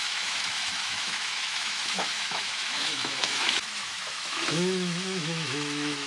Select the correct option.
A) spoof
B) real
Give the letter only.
A